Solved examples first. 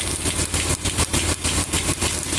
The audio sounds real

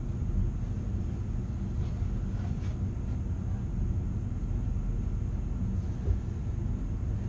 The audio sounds real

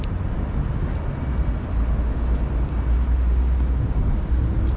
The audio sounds real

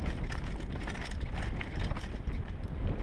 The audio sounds real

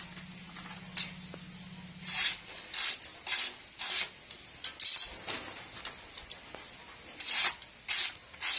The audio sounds real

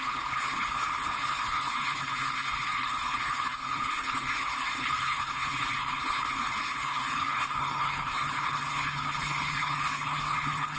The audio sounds fake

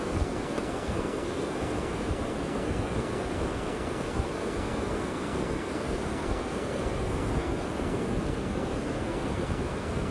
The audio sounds fake